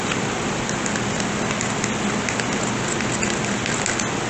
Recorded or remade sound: recorded